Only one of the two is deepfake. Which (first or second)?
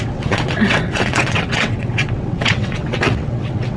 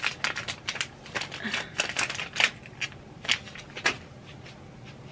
first